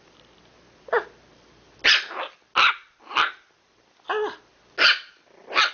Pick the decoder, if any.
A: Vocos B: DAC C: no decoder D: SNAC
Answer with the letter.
C